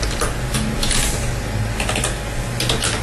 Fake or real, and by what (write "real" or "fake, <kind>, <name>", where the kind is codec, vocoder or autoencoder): real